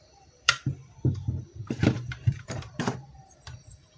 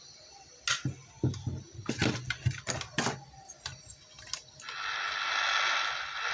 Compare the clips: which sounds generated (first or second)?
first